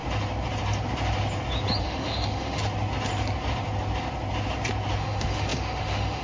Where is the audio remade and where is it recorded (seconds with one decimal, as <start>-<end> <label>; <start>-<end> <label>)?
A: 0.0-1.8 recorded; 1.8-2.6 remade; 2.6-5.0 recorded; 5.0-6.2 remade